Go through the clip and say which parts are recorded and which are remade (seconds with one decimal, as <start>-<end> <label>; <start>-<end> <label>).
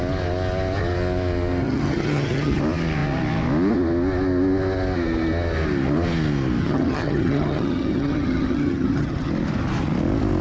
0.0-1.6 recorded; 1.6-2.6 remade; 2.6-6.6 recorded; 6.6-9.3 remade; 9.3-10.4 recorded